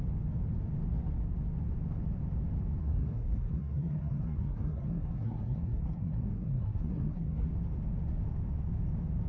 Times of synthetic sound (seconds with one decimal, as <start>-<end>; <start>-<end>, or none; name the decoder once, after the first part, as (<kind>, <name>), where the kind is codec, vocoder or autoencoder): 2.8-7.5 (codec, SNAC)